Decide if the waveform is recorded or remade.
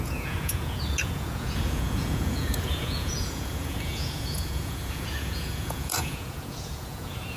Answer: remade